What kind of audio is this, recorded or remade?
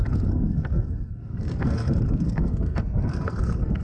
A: remade